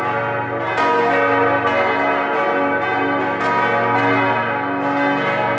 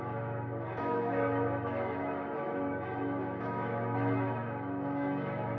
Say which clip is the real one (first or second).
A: first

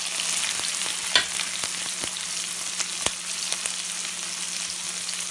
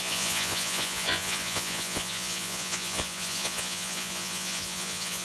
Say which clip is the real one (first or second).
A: first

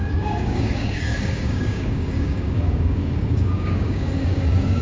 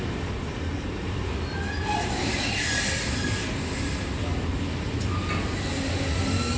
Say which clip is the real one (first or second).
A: second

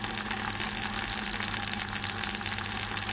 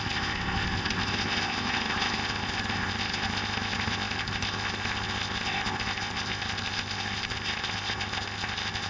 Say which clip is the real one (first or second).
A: first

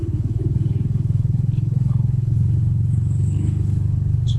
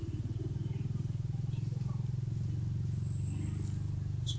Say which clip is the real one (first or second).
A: second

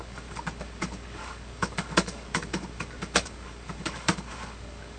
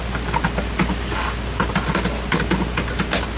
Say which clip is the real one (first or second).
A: second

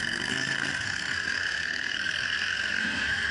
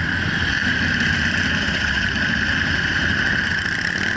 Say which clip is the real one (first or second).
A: second